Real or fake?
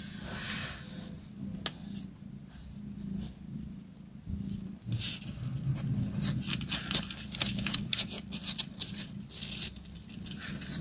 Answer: real